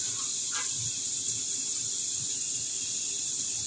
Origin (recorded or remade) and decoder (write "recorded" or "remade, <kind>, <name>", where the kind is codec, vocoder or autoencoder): remade, vocoder, BigVGAN v2